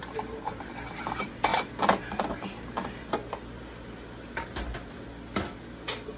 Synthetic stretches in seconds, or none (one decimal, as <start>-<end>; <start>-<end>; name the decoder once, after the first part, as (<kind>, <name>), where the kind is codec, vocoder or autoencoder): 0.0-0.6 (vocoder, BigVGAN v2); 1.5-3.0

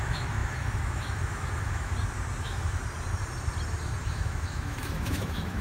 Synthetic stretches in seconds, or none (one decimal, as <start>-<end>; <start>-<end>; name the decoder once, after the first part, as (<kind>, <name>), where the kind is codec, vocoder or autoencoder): 0.0-1.9 (autoencoder, DAC-VAE); 2.4-2.8; 4.0-5.6

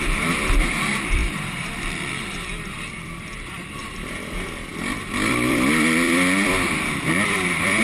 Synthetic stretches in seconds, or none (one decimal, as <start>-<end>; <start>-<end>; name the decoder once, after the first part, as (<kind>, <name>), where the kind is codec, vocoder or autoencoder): 0.0-7.8 (vocoder, BigVGAN v2)

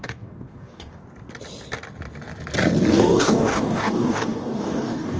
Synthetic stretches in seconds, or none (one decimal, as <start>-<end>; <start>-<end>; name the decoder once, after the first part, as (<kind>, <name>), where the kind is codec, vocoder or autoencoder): 0.0-1.0 (codec, DAC); 2.9-5.2

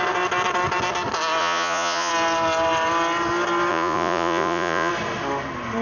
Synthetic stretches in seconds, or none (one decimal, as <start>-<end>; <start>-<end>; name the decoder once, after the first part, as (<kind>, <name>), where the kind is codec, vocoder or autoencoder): 1.4-2.1 (vocoder, Vocos); 3.7-4.9